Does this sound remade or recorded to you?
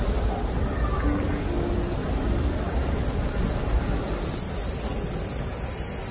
recorded